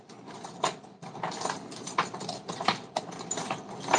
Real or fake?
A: real